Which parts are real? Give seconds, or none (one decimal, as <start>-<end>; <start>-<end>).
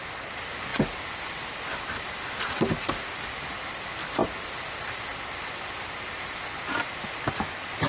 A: 0.0-7.9